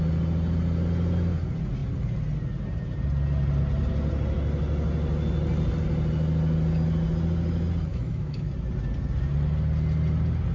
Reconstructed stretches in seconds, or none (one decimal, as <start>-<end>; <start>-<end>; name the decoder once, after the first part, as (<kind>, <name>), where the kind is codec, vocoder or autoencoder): 7.9-8.5 (autoencoder, DAC-VAE)